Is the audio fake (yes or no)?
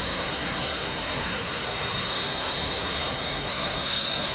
yes